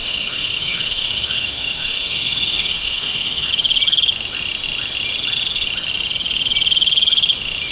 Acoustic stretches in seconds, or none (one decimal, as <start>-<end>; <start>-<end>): 3.5-7.7